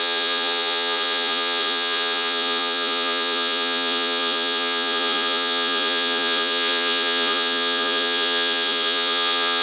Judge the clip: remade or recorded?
remade